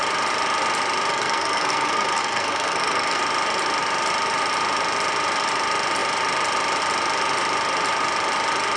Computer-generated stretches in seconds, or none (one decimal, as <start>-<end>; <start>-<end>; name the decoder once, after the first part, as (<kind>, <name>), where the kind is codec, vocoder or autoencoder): 1.1-3.2 (codec, SNAC)